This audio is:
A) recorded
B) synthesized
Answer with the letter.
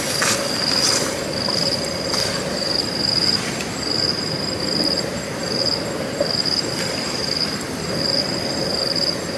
A